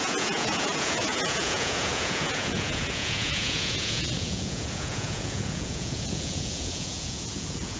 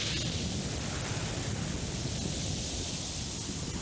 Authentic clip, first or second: second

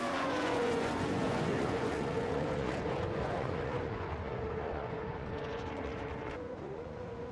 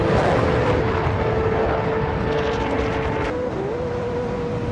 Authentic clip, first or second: second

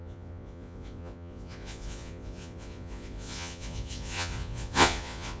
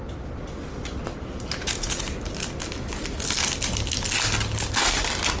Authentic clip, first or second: second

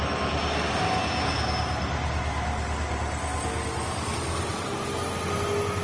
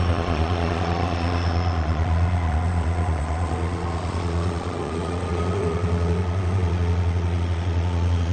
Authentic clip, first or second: first